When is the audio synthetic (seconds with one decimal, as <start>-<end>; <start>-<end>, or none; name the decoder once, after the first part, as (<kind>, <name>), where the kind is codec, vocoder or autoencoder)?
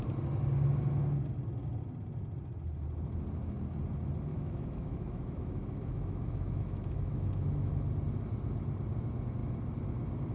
4.3-7.9 (autoencoder, DAC-VAE)